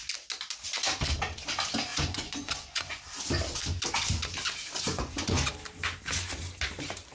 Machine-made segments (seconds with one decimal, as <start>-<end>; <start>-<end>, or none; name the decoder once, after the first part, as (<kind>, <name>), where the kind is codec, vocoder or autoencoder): 1.9-3.0 (vocoder, Vocos); 4.9-5.5

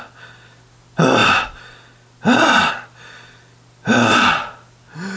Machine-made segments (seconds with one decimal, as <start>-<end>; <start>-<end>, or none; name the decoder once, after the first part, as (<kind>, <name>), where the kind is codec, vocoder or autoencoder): none

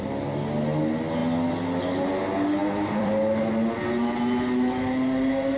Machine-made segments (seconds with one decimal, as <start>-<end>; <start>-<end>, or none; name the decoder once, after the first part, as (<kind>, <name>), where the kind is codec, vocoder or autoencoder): 2.6-3.5 (vocoder, BigVGAN v2)